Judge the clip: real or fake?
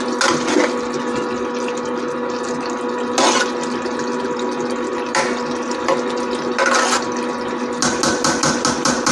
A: real